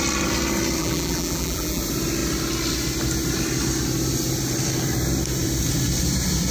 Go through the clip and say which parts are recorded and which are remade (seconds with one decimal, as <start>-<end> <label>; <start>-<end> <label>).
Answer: 0.0-0.8 recorded; 0.8-1.8 remade; 1.8-6.5 recorded